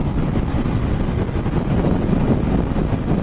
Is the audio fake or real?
real